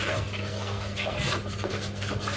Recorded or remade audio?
remade